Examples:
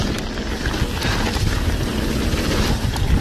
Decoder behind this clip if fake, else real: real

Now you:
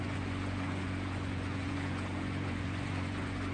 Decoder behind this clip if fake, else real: fake, vocoder, Vocos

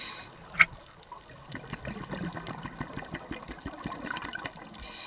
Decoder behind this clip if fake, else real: real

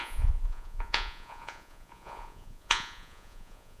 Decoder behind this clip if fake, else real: fake, vocoder, Vocos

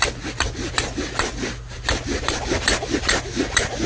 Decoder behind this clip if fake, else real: real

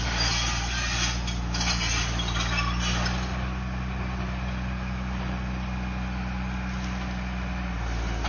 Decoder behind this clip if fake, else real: real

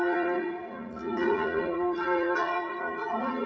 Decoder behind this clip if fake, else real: fake, vocoder, Vocos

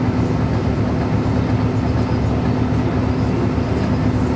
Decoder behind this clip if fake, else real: real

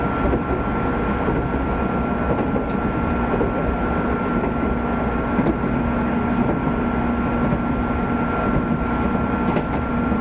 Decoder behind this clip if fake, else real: real